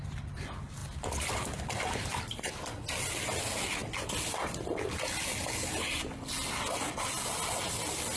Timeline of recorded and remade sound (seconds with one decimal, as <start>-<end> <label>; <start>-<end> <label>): 0.0-8.2 recorded